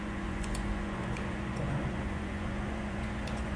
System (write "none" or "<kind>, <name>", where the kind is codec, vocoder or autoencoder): vocoder, Vocos